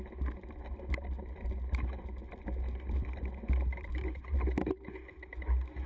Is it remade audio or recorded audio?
recorded